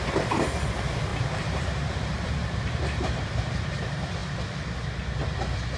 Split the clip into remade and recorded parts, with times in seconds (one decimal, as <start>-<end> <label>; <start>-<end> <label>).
0.0-1.1 recorded; 1.1-3.8 remade; 3.8-5.8 recorded